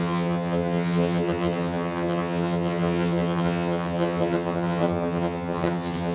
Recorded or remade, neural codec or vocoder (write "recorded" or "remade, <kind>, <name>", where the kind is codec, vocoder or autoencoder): remade, vocoder, HiFi-GAN